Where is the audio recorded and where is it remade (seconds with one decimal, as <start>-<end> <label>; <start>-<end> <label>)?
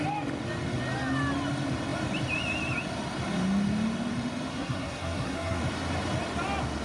0.0-4.5 recorded; 4.5-5.6 remade; 5.6-6.8 recorded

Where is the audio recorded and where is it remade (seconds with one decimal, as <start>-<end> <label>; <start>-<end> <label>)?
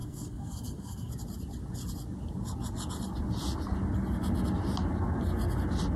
0.0-1.1 remade; 1.1-6.0 recorded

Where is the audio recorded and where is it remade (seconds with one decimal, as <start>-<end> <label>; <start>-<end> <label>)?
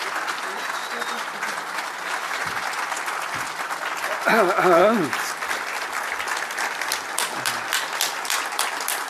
0.0-9.1 recorded